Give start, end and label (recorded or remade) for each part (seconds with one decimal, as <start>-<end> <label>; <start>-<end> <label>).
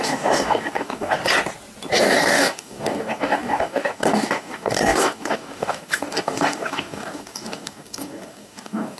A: 0.0-1.2 remade; 1.2-2.0 recorded; 2.0-9.0 remade